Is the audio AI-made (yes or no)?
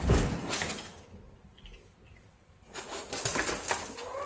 no